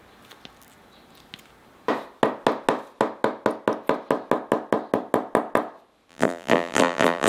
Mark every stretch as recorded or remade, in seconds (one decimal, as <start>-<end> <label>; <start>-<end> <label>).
0.0-6.1 recorded; 6.1-7.3 remade

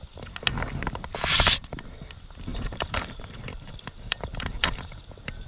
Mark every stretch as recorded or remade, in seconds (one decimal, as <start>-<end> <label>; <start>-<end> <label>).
0.0-2.5 recorded; 2.5-5.5 remade